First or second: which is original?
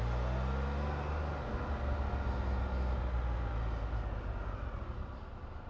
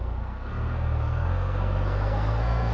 first